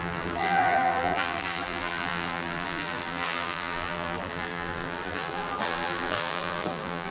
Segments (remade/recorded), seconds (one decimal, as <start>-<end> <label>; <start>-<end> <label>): 0.0-7.1 remade